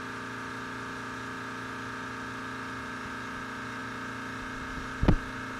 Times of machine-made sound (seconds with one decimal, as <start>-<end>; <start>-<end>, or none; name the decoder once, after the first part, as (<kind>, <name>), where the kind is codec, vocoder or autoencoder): none